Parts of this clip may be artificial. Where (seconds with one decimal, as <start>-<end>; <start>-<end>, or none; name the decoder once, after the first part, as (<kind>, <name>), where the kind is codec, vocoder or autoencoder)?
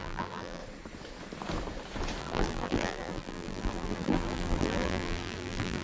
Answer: 0.0-0.6 (vocoder, BigVGAN v2); 2.2-5.8